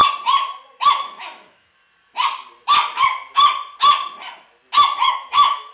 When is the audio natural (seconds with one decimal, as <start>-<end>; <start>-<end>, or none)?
0.0-0.9; 1.7-5.1

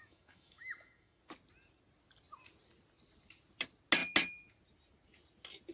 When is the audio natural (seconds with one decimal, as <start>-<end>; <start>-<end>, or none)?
1.2-5.7

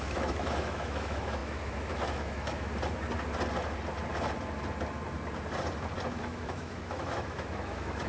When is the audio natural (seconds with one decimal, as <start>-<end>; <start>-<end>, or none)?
2.7-6.1

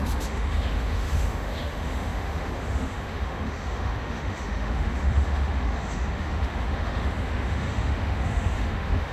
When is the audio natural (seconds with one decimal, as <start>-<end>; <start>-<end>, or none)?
none

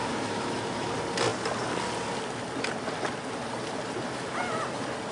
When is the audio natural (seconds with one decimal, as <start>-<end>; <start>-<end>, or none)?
0.9-5.1